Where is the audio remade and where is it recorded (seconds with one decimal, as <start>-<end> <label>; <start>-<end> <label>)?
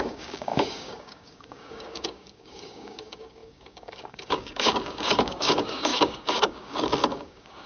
0.0-7.7 remade